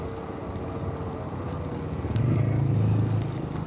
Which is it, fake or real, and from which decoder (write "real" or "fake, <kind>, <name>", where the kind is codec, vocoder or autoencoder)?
real